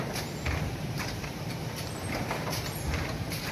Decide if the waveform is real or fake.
fake